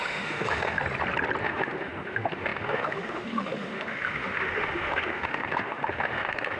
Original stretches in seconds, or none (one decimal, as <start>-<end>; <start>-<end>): 0.8-1.4